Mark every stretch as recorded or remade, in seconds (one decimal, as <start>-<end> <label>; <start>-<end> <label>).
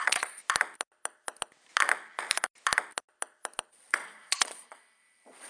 0.0-0.4 remade; 0.4-3.7 recorded; 3.7-5.5 remade